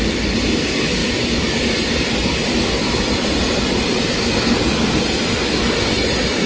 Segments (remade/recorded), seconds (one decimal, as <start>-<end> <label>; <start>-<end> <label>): 0.0-6.5 recorded